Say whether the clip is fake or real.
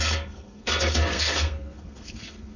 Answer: fake